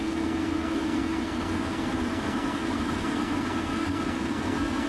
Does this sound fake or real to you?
fake